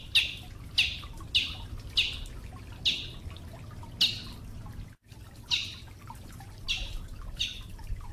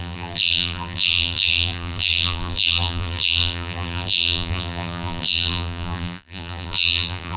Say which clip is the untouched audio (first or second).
first